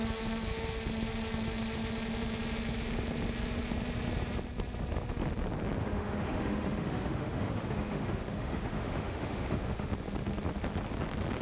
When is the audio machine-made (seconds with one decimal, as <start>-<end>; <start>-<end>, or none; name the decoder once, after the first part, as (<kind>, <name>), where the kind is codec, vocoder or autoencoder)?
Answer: 5.8-9.9 (autoencoder, DAC-VAE)